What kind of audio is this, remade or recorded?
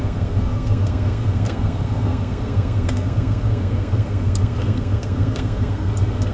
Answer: remade